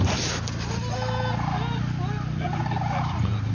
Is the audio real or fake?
real